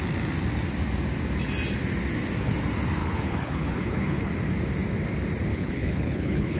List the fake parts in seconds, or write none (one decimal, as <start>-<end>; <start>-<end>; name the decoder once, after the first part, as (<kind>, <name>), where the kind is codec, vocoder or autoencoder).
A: 3.0-4.3 (codec, HILCodec); 5.5-6.6